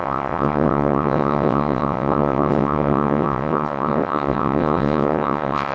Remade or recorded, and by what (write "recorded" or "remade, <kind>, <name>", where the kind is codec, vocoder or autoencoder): remade, vocoder, WaveNeXt